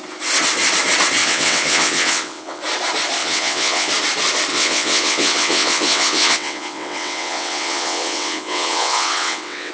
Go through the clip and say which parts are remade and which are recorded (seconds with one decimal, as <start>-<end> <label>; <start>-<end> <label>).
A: 0.0-1.2 recorded; 1.2-2.6 remade; 2.6-3.2 recorded; 3.2-3.9 remade; 3.9-4.5 recorded; 4.5-9.7 remade